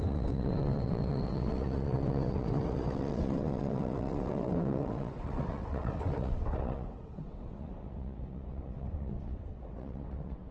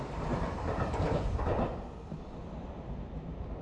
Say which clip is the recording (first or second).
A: second